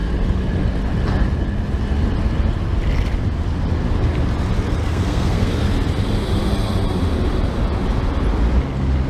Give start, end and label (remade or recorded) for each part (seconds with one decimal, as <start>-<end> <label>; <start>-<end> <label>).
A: 0.0-4.8 recorded; 4.8-5.5 remade; 5.5-9.1 recorded